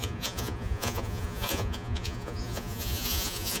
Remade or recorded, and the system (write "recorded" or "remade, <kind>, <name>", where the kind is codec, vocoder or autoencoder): remade, vocoder, Vocos